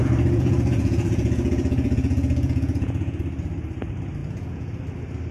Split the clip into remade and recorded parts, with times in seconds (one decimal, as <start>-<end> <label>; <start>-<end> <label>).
0.0-3.2 remade; 3.2-4.2 recorded; 4.2-4.8 remade; 4.8-5.3 recorded